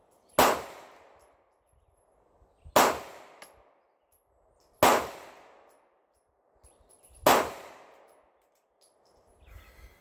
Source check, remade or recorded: recorded